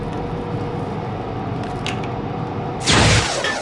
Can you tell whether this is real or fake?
real